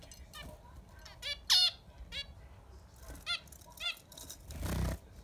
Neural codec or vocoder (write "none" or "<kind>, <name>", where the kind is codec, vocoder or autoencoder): none